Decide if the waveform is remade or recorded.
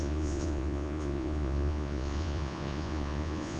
remade